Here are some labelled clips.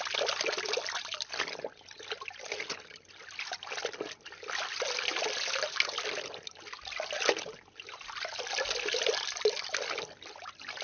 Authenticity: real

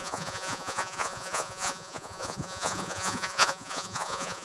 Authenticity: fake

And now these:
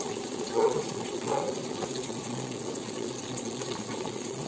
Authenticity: fake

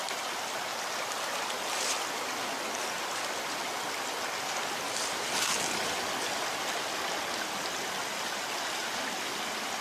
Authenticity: real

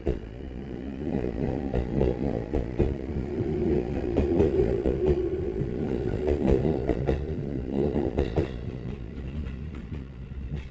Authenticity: fake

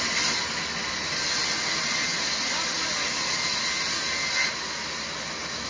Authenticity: real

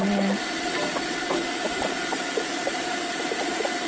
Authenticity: real